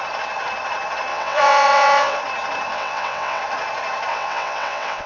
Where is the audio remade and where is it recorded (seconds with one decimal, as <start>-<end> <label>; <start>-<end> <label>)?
0.0-1.1 recorded; 1.1-2.2 remade; 2.2-2.7 recorded; 2.7-3.4 remade; 3.4-4.1 recorded; 4.1-5.1 remade

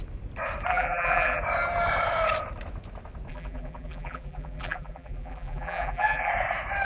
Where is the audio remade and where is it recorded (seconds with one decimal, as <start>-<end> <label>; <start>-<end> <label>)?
0.0-0.7 recorded; 0.7-1.4 remade; 1.4-3.3 recorded; 3.3-6.3 remade; 6.3-6.8 recorded

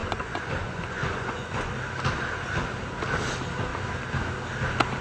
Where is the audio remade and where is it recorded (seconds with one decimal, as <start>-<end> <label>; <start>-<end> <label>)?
0.0-1.7 remade; 1.7-5.0 recorded